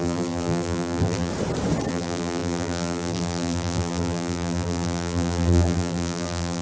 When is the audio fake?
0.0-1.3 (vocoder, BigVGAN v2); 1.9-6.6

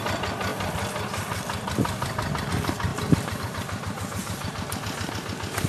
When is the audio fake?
2.9-3.4 (vocoder, BigVGAN v2); 4.2-4.8

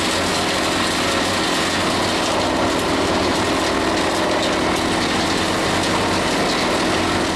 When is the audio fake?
none

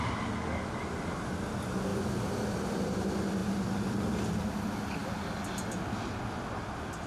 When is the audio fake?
1.9-2.9 (vocoder, BigVGAN v2)

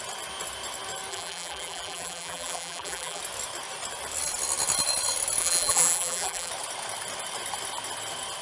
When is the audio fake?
1.1-3.2 (vocoder, BigVGAN v2); 5.4-6.5

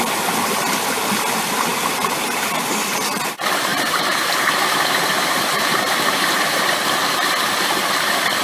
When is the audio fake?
3.7-6.6 (vocoder, BigVGAN v2)